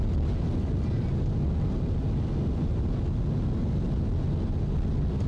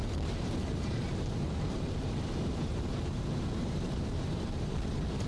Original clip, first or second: first